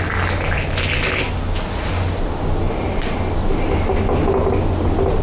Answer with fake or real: real